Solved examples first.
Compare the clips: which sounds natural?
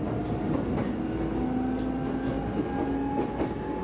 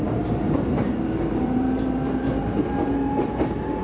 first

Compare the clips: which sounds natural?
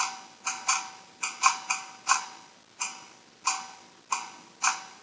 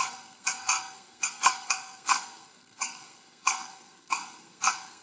first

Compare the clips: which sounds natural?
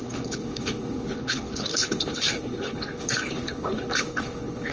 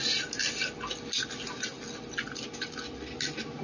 second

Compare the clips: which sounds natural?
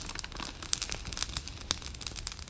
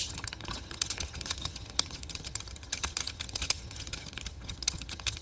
first